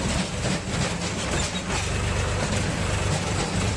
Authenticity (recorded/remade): recorded